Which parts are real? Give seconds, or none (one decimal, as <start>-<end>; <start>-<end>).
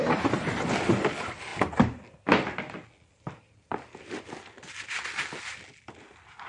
0.0-6.5